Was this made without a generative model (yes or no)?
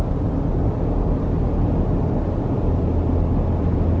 yes